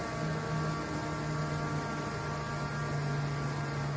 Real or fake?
real